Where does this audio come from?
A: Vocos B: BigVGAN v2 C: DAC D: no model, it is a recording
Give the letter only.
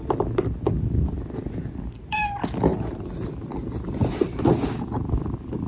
D